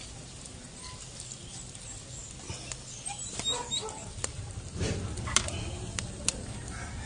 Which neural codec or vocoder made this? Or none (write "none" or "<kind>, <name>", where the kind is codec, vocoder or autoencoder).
none